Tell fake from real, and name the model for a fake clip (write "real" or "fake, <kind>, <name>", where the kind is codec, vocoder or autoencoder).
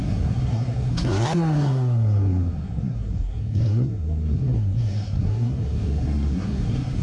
fake, codec, SNAC